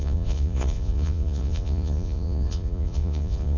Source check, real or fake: fake